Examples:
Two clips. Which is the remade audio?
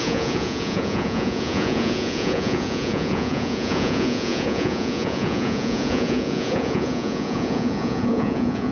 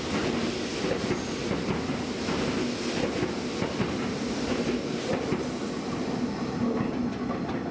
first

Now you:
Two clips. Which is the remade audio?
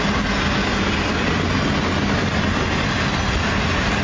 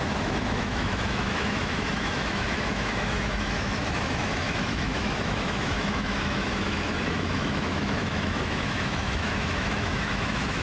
second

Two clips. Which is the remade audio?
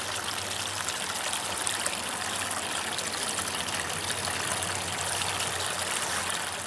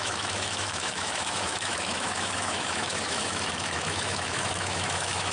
second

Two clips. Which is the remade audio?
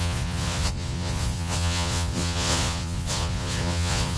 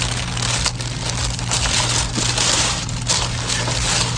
first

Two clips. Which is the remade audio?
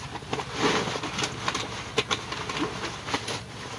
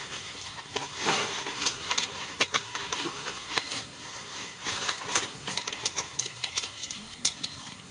second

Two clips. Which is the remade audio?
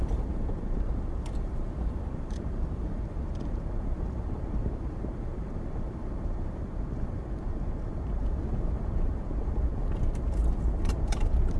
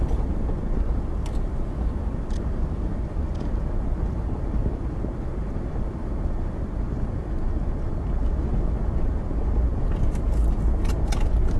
first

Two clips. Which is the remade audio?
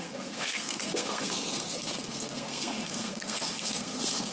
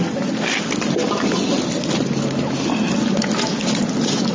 first